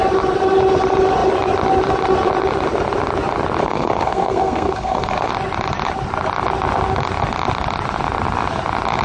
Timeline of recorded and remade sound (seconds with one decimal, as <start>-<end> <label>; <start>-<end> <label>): 0.0-3.6 recorded; 3.6-5.3 remade; 5.3-9.0 recorded